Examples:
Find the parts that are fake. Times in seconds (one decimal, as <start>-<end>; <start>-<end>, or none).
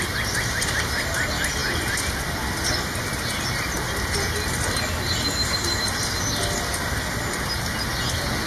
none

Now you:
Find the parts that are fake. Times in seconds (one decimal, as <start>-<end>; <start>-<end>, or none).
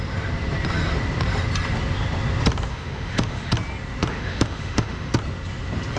2.7-3.5; 4.1-5.1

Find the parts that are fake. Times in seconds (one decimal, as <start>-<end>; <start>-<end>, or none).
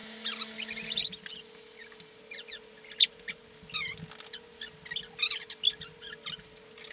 none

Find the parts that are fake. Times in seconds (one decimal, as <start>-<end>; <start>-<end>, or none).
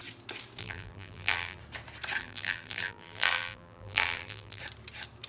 0.6-1.6; 2.2-4.6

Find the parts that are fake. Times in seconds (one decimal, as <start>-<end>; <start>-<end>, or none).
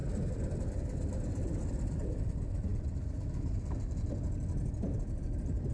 0.0-1.6; 2.7-4.1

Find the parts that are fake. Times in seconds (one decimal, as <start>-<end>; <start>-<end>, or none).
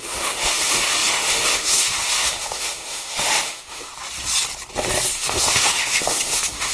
0.0-3.9; 5.1-6.7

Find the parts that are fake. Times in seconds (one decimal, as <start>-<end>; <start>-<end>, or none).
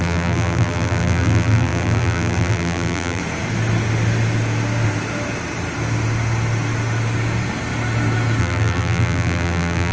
0.0-3.2; 8.4-9.9